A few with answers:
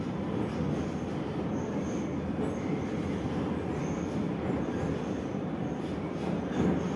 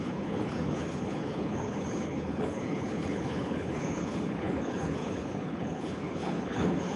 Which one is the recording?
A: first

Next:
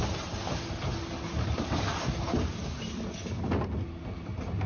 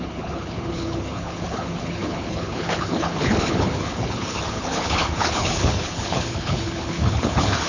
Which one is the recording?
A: first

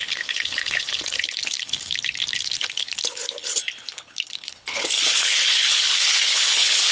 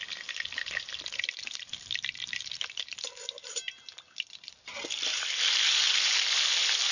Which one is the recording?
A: second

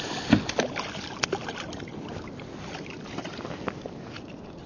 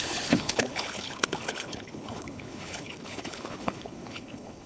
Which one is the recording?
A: first